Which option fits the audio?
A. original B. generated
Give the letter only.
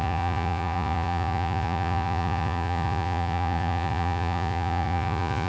B